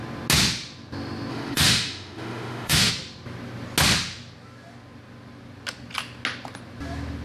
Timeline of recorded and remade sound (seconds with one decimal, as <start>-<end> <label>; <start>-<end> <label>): 0.0-1.3 recorded; 1.3-2.9 remade; 2.9-7.2 recorded